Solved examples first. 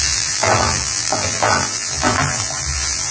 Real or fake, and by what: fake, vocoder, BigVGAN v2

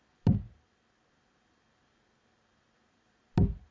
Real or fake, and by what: real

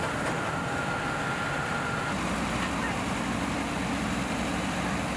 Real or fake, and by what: fake, vocoder, BigVGAN v2